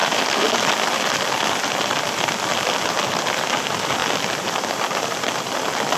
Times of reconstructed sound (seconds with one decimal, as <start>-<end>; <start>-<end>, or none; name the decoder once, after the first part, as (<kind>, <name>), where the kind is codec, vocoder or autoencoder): none